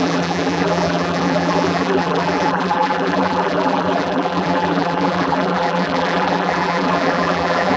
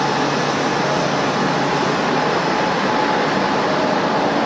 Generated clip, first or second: first